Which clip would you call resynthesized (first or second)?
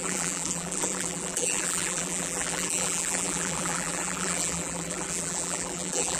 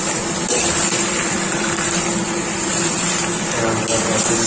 first